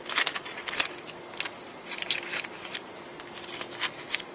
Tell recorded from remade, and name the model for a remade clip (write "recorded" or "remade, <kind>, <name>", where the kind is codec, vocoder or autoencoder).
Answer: recorded